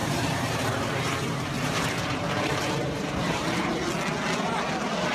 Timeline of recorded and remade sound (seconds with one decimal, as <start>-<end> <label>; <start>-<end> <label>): 0.0-3.7 remade; 3.7-5.1 recorded